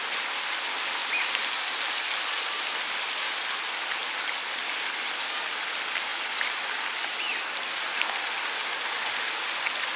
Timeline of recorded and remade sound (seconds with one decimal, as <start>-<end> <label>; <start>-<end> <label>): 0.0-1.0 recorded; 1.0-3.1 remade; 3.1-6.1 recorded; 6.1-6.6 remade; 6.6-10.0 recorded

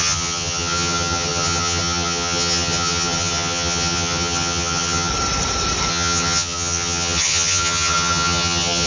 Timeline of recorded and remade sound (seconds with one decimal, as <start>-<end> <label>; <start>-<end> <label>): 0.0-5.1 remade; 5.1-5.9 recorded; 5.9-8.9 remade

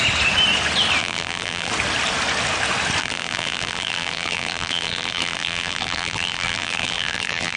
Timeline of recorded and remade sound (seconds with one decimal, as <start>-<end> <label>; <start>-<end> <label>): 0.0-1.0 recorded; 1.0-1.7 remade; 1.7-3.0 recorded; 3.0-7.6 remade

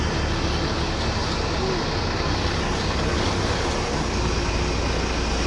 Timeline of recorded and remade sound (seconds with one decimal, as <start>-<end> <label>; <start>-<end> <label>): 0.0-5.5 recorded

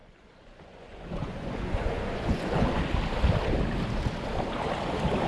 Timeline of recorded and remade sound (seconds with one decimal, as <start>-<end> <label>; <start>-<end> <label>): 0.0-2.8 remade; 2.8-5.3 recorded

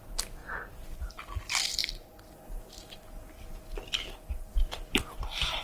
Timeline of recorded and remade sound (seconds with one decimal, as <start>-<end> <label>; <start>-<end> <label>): 0.0-0.4 recorded; 0.4-1.2 remade; 1.2-1.8 recorded; 1.8-5.6 remade